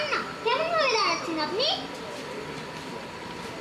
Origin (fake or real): real